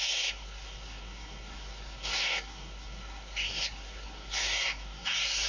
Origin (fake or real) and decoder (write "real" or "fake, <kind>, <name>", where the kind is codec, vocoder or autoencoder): fake, codec, SNAC